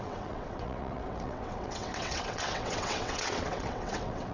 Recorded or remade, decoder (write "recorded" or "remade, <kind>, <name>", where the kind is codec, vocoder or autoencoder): remade, vocoder, WaveNeXt